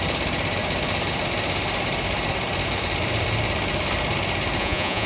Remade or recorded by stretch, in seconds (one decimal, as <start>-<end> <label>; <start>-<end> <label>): 0.0-4.6 recorded; 4.6-5.1 remade